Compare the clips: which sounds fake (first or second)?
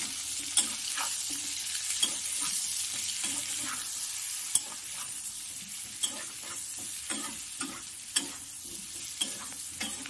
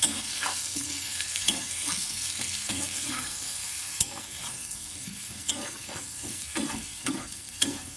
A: second